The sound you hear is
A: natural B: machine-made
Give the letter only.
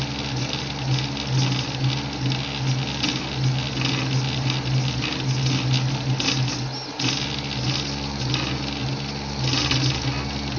A